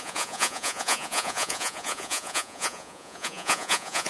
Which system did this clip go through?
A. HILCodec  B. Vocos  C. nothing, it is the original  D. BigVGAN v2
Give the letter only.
B